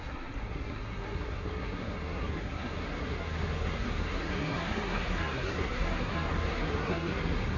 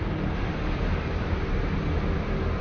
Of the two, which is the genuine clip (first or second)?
second